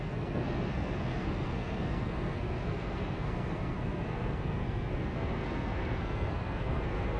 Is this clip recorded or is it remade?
remade